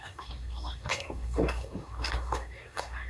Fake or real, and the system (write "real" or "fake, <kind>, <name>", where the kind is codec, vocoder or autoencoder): fake, codec, SNAC